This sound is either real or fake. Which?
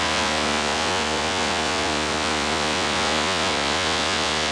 fake